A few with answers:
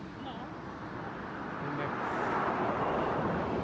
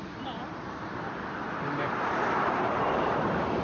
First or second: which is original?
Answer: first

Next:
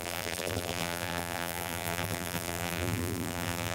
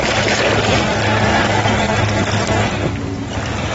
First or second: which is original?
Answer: second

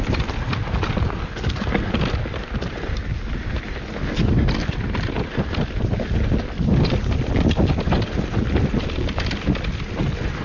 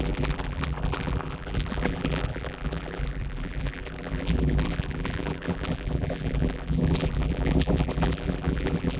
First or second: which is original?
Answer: first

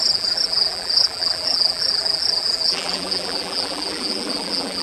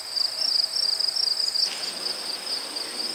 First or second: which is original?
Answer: second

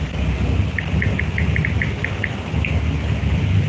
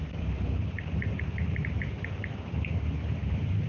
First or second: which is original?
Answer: first